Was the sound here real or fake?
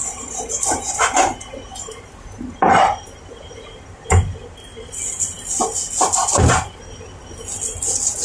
real